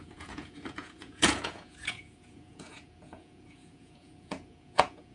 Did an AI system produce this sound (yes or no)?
yes